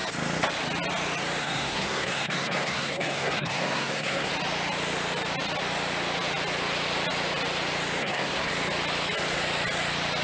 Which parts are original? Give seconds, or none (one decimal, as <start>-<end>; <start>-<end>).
0.0-1.4; 4.3-8.0; 8.5-10.2